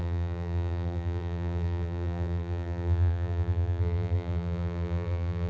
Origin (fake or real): fake